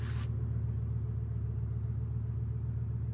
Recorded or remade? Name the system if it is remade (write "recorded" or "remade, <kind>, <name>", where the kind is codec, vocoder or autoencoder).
recorded